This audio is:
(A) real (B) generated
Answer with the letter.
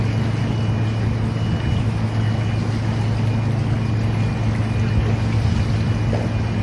A